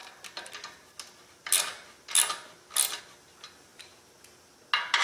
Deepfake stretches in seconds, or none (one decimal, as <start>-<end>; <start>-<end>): 3.0-3.7